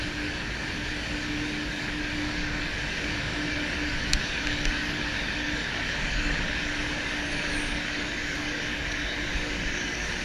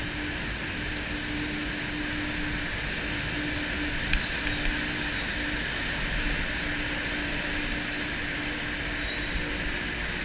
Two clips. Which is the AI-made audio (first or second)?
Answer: first